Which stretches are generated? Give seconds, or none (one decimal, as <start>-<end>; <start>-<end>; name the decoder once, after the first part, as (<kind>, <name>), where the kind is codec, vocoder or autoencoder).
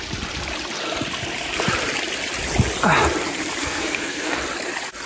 3.6-4.4 (codec, SNAC)